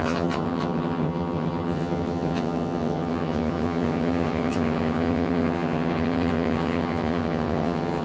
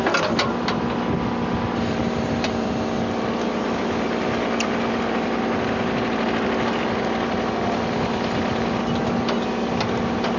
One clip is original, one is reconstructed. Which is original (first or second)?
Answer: second